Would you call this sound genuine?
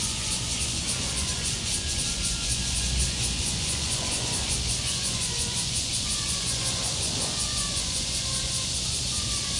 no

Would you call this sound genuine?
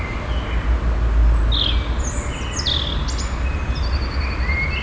yes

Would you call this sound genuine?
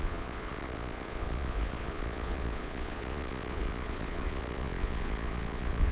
no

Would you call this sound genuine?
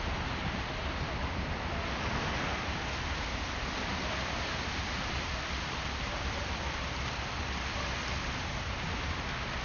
yes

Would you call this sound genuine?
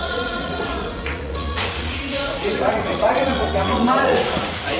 no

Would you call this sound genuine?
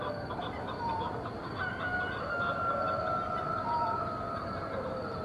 yes